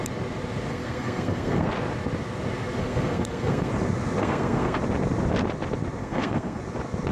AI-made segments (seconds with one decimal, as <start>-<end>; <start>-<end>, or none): 0.7-1.7; 2.8-3.7; 4.2-4.8; 6.0-6.6